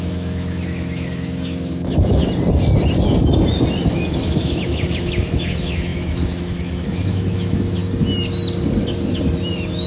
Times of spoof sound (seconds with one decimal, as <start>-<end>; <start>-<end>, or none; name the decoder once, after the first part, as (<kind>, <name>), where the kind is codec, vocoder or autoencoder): 0.0-2.2 (autoencoder, DAC-VAE); 3.9-7.8; 9.5-9.9